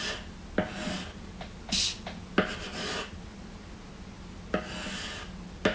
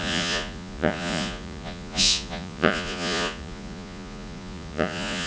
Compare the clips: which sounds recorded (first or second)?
first